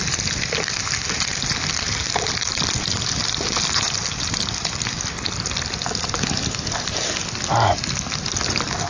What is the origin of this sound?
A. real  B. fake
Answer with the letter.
A